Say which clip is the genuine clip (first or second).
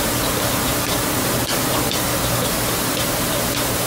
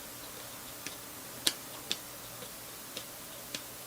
second